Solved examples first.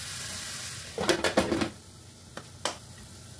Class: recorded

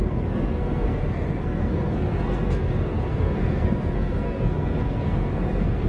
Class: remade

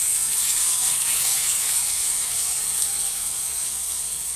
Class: remade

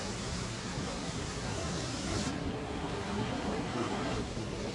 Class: remade